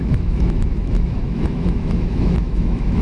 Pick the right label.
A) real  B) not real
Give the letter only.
B